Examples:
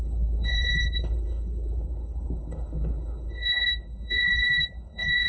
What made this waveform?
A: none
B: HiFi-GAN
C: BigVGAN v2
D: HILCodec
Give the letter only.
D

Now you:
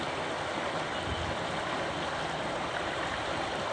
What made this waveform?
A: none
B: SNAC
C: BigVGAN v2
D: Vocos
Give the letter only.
A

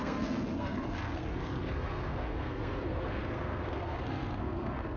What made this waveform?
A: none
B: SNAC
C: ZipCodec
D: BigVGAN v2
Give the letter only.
B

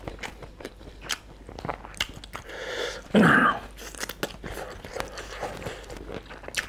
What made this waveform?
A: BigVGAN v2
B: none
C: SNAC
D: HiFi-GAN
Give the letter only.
B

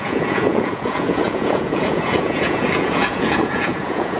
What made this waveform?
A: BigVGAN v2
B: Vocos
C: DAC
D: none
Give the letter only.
B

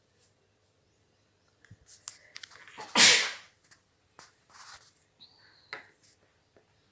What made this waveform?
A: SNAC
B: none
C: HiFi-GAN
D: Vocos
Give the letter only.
B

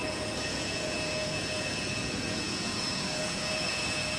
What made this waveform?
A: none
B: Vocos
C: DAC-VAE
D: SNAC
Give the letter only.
B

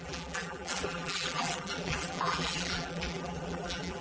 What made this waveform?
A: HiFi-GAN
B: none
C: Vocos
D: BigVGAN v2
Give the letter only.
D